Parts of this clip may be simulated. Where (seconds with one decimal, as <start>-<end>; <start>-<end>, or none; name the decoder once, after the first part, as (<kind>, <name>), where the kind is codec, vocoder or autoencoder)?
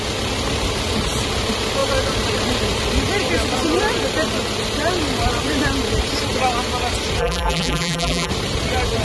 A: 7.2-8.3 (vocoder, BigVGAN v2)